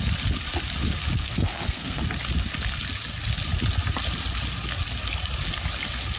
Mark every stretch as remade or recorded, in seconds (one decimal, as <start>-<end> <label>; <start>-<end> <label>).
0.0-1.2 recorded; 1.2-2.0 remade; 2.0-6.2 recorded